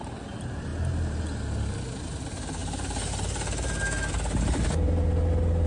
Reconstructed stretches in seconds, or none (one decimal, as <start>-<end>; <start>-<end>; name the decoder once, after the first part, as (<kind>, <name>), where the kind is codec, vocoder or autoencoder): 0.7-1.2 (vocoder, BigVGAN v2)